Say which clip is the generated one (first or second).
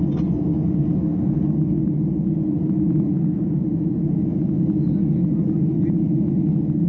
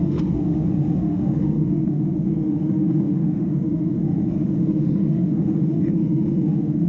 second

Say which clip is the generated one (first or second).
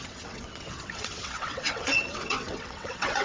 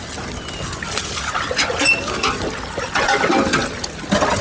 first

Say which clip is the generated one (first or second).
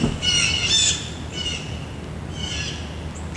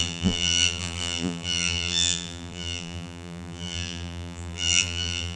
second